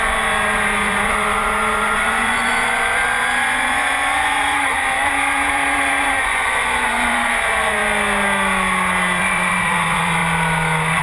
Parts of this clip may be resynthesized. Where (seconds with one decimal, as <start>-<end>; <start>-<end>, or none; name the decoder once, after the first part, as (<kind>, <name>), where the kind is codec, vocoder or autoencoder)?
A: 0.0-7.8 (vocoder, Vocos); 9.2-10.2